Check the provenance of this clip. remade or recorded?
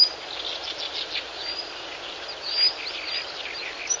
recorded